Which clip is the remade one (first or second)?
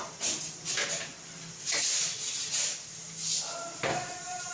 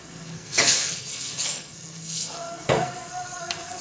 second